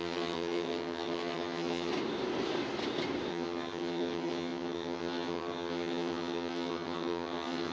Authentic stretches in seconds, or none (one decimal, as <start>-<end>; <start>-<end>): 1.9-3.3